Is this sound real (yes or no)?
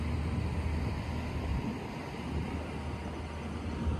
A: yes